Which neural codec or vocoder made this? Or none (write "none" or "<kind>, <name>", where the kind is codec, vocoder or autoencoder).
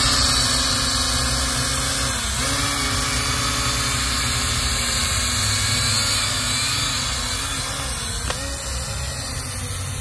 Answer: none